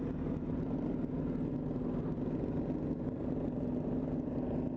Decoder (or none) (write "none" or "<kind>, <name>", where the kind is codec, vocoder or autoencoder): none